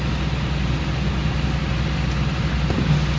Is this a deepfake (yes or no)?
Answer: no